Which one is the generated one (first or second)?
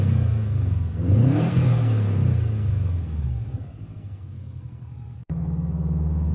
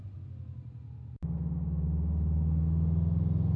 first